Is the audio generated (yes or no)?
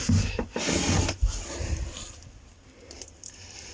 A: no